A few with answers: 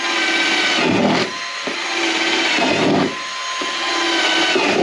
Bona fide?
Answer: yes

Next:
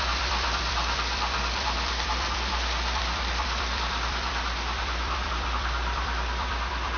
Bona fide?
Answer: no